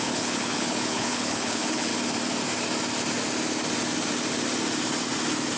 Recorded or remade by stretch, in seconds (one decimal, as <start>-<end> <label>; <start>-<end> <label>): 0.0-1.9 remade; 1.9-5.6 recorded